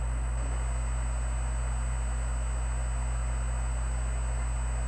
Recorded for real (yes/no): yes